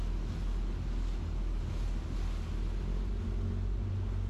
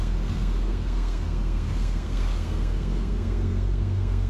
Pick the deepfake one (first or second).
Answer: second